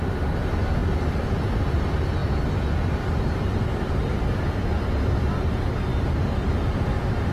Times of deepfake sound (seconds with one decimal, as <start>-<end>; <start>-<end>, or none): none